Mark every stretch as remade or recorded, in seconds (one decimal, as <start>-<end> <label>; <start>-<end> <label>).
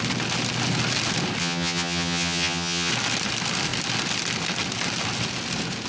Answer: 0.0-1.4 recorded; 1.4-2.9 remade; 2.9-5.9 recorded